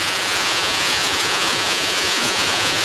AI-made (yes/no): yes